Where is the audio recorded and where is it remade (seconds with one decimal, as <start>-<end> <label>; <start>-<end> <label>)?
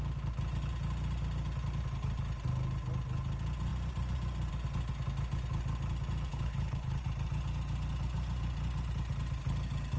0.0-6.3 recorded; 6.3-7.0 remade; 7.0-10.0 recorded